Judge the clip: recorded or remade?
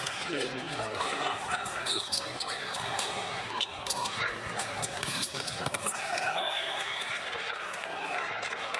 remade